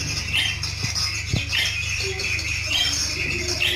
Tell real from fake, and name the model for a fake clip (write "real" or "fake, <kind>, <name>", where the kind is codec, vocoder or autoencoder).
real